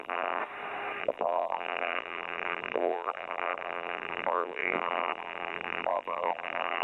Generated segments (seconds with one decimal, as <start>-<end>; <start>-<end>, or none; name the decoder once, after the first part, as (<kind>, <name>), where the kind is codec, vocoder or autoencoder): 0.0-0.4 (vocoder, BigVGAN v2); 1.0-6.8